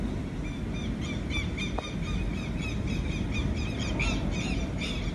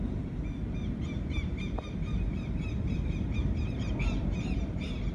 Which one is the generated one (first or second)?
second